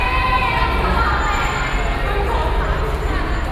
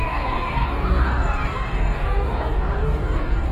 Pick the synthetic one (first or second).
second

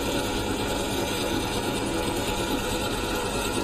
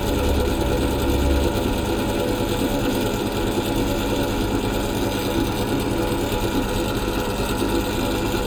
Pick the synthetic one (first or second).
first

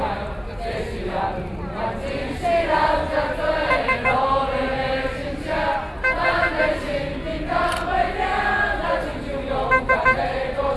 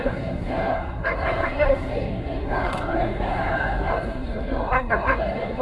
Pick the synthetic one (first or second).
second